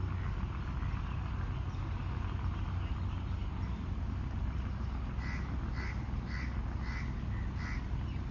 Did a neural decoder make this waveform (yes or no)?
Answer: no